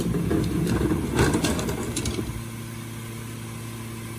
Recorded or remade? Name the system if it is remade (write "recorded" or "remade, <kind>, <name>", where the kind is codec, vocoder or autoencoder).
recorded